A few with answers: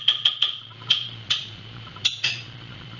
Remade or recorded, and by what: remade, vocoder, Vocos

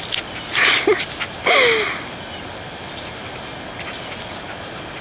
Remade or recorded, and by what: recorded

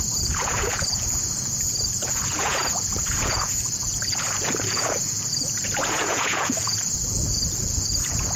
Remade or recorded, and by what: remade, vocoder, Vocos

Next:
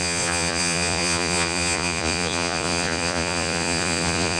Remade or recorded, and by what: remade, vocoder, Vocos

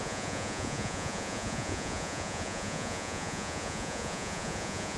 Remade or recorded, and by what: remade, vocoder, Vocos